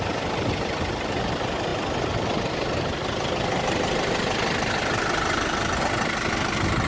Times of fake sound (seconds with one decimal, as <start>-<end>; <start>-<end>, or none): none